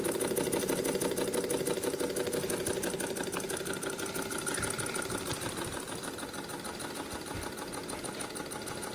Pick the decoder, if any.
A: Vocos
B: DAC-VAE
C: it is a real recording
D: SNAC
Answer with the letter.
C